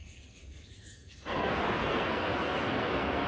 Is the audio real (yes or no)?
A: no